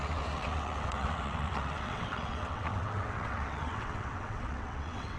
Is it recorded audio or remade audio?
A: remade